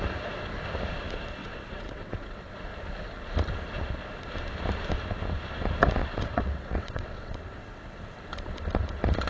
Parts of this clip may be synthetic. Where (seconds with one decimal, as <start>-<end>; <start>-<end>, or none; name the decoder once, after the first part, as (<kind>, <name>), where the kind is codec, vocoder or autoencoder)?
1.4-2.5 (vocoder, WaveNeXt); 6.0-8.0